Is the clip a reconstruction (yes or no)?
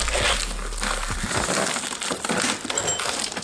no